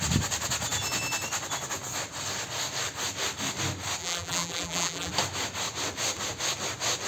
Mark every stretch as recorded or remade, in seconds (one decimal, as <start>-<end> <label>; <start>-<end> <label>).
0.0-4.0 recorded; 4.0-5.1 remade; 5.1-7.1 recorded